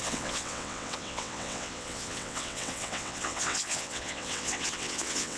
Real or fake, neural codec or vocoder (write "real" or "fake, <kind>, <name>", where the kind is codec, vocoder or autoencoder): fake, vocoder, WaveNeXt